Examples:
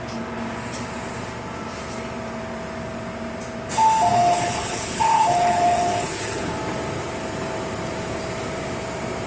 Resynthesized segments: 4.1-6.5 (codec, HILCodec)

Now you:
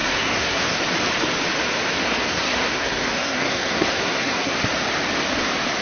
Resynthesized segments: 0.0-0.8 (codec, SNAC); 2.0-4.5

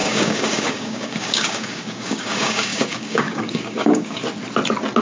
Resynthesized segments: 0.0-4.2 (codec, DAC)

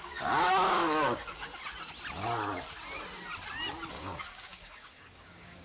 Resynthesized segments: 0.0-1.5 (codec, DAC); 3.9-5.6

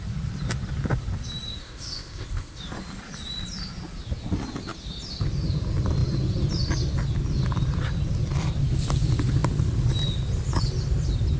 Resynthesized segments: 1.6-2.6 (codec, ZipCodec)

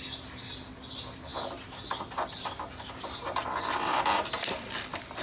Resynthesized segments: none

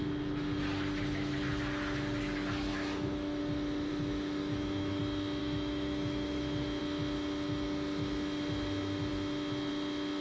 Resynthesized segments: 2.7-3.4 (autoencoder, DAC-VAE); 3.9-5.0; 5.4-6.8

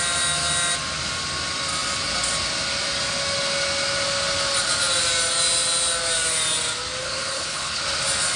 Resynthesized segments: 7.0-7.8 (codec, HILCodec)